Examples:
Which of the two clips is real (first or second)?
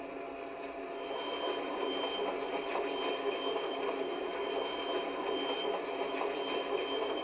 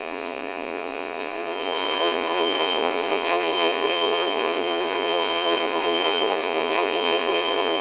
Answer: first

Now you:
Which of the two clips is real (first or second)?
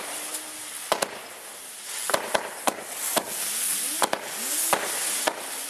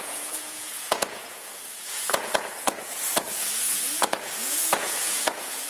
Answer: first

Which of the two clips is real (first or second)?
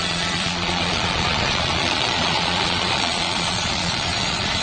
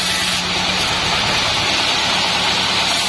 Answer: second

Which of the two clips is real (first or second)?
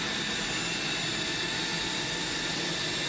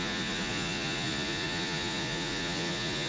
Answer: first